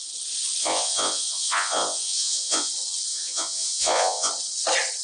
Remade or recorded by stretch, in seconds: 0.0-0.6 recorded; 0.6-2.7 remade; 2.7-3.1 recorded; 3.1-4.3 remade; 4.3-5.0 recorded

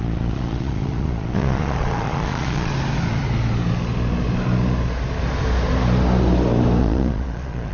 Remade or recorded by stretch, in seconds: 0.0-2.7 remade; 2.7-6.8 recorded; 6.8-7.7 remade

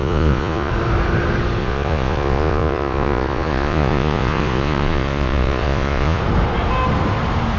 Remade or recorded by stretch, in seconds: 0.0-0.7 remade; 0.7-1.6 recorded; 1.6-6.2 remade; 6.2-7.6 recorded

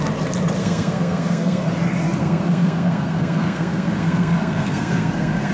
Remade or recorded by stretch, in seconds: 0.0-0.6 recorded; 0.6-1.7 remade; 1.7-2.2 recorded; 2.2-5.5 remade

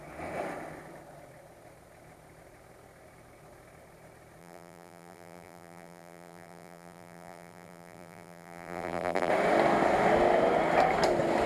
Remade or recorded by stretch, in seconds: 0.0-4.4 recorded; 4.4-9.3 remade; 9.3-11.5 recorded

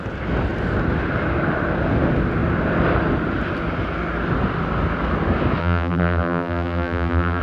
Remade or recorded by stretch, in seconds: 0.0-5.6 recorded; 5.6-7.4 remade